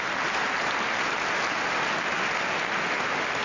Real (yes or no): yes